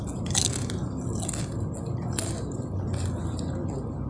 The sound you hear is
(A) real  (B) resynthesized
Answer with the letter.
A